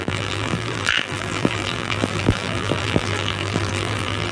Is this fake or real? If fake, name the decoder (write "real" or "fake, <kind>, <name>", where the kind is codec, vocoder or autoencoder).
fake, vocoder, BigVGAN v2